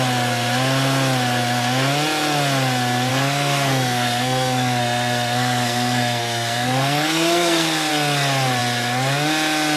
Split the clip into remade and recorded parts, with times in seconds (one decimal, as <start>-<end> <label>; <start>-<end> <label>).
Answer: 0.0-3.1 recorded; 3.1-7.9 remade; 7.9-9.8 recorded